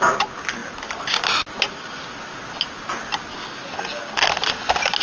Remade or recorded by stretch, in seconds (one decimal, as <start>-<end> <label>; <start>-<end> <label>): 0.0-5.0 recorded